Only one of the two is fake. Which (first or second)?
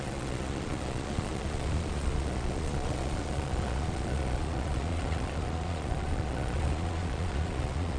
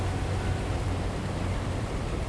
first